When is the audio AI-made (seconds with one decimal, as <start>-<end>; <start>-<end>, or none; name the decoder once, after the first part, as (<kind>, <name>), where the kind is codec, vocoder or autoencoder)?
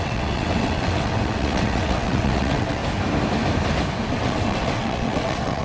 0.0-2.8 (vocoder, WaveNeXt); 4.1-5.6